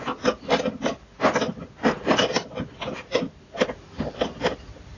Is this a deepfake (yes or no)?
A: no